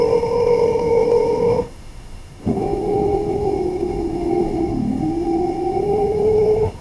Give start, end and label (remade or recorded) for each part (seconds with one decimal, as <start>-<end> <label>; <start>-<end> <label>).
0.0-6.8 remade